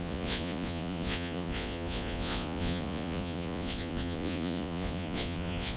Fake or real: fake